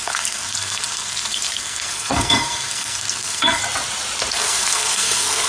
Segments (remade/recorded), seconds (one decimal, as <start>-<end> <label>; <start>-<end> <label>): 0.0-3.6 remade; 3.6-4.3 recorded; 4.3-5.5 remade